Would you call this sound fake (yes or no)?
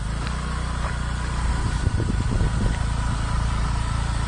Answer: no